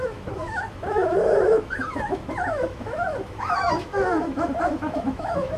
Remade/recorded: remade